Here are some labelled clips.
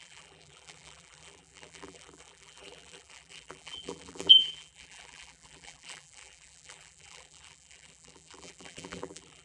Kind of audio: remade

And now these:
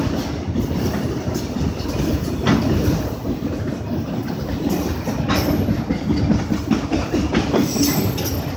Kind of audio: recorded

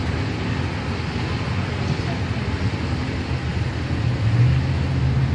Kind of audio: recorded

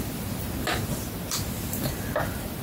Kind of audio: recorded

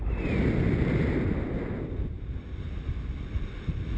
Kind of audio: recorded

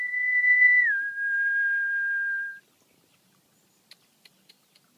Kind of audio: recorded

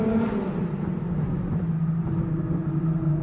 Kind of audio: recorded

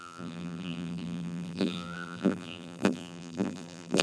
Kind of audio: remade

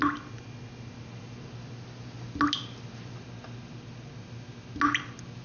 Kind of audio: recorded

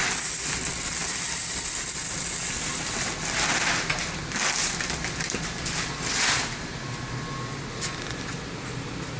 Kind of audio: recorded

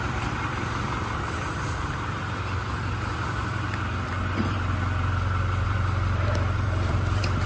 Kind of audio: remade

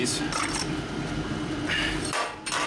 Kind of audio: remade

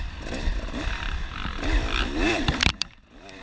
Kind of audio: remade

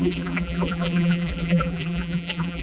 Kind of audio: remade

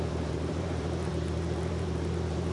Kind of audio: remade